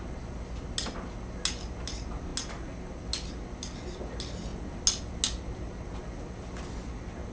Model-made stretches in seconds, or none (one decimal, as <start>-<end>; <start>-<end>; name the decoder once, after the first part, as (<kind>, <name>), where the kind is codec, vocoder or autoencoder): none